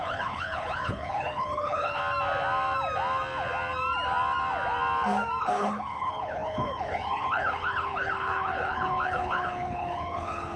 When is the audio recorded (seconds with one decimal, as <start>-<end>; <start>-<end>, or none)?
2.0-5.4